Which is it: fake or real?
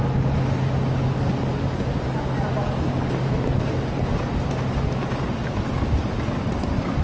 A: real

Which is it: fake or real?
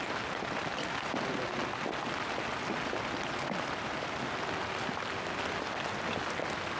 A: real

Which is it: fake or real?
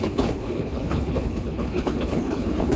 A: fake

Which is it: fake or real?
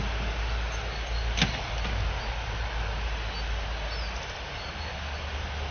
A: real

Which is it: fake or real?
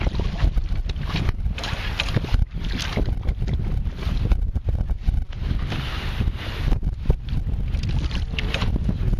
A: real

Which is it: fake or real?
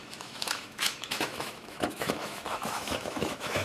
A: fake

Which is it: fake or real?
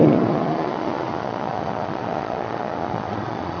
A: fake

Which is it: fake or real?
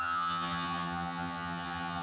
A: fake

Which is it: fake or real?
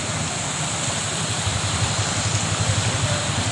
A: real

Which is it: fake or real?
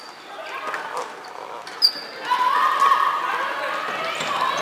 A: real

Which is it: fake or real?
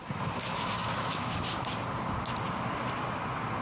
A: real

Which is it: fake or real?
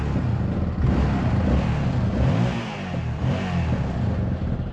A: real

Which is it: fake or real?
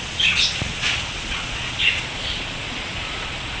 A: fake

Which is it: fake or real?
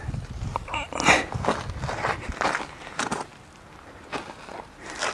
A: real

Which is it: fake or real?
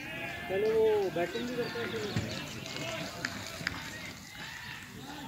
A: real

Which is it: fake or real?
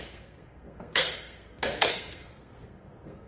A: fake